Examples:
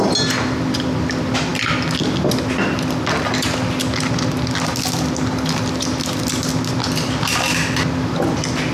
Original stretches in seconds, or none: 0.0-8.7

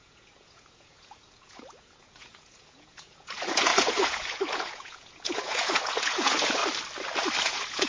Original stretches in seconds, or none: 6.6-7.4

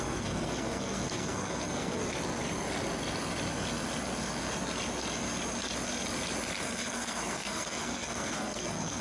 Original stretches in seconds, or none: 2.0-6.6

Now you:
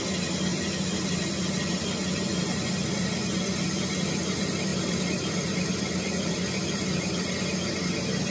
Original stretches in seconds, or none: 0.0-4.7; 7.1-8.3